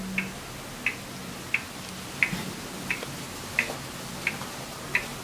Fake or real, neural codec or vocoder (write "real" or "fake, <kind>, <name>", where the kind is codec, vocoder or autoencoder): real